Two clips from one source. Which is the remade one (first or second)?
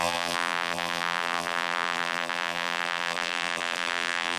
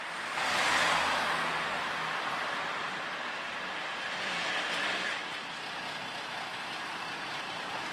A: first